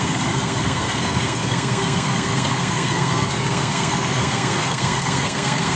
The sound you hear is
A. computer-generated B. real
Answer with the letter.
A